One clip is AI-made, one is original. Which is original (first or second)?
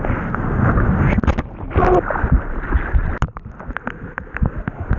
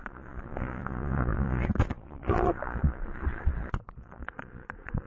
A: first